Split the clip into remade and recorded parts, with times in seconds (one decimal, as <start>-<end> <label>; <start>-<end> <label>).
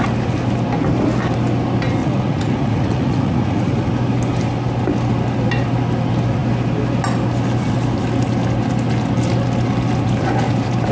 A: 0.0-2.0 recorded; 2.0-3.9 remade; 3.9-10.9 recorded